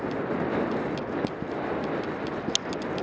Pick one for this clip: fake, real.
real